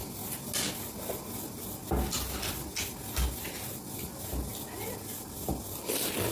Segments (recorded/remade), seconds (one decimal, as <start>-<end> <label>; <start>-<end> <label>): 0.0-6.3 recorded